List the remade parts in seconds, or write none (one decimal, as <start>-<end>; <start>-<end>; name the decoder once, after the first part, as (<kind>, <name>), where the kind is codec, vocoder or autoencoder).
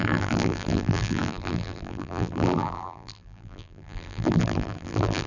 0.0-5.3 (vocoder, BigVGAN v2)